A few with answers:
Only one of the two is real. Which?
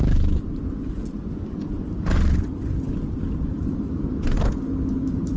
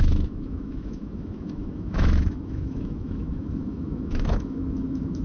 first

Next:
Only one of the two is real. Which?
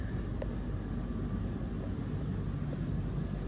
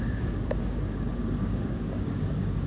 first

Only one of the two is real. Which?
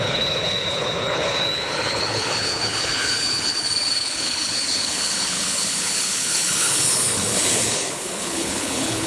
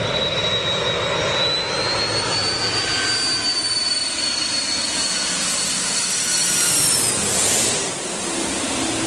second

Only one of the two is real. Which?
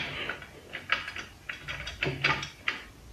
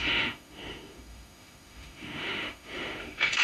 first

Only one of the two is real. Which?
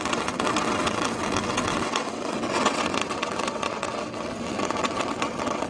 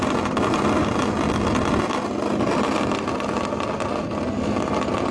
second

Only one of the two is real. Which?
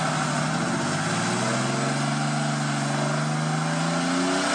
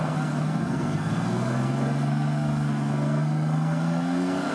first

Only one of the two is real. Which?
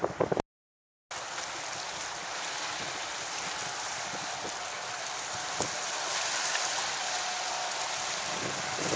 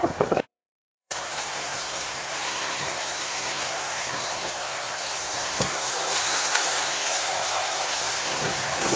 first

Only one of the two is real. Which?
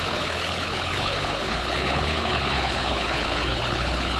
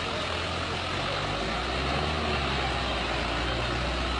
second